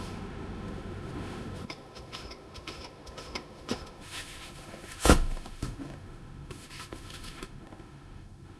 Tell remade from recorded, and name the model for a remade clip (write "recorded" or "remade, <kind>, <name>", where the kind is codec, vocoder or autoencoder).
remade, autoencoder, DAC-VAE